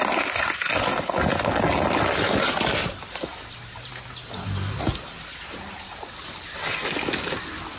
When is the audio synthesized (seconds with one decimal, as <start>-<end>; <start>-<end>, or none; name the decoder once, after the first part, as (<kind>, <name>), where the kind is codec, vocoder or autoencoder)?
2.8-3.9 (vocoder, BigVGAN v2); 5.3-6.1